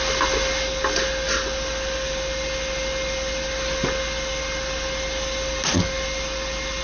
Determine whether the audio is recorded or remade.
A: recorded